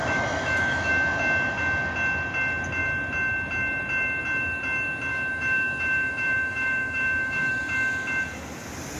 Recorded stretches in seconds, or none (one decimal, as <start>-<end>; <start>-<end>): 0.9-5.1; 7.5-9.0